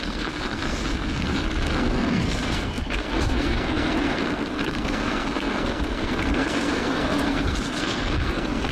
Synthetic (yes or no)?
yes